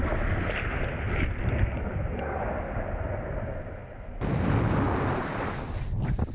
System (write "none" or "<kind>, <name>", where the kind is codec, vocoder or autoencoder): none